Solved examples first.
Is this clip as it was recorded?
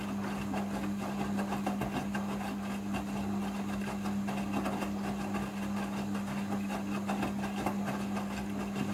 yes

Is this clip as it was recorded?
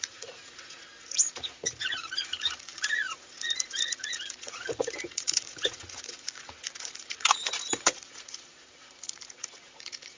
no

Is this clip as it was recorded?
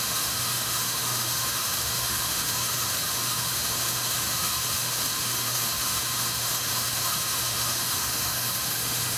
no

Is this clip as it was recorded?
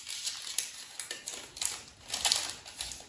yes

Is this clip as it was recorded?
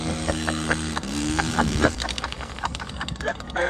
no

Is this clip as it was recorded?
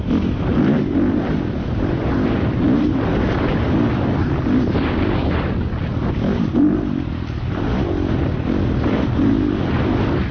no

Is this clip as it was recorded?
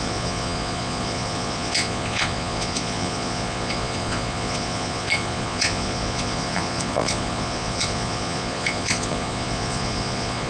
no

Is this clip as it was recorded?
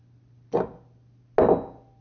yes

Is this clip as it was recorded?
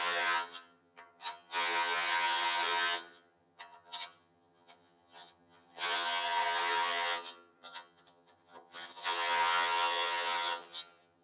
no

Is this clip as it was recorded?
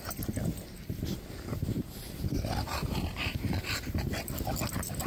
yes